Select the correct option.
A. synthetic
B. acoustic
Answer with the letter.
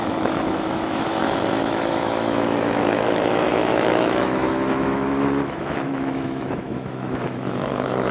A